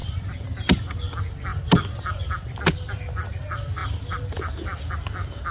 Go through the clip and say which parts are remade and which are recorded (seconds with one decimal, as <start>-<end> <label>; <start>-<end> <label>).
0.0-1.0 remade; 1.0-1.5 recorded; 1.5-2.2 remade; 2.2-3.8 recorded; 3.8-4.9 remade; 4.9-5.5 recorded